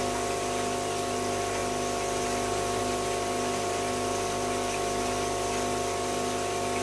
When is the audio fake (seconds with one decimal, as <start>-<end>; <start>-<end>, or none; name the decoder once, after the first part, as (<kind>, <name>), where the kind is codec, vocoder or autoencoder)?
none